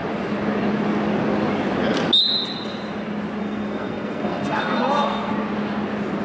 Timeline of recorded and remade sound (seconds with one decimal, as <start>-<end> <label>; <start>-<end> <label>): 0.0-3.4 recorded; 3.4-5.3 remade; 5.3-6.2 recorded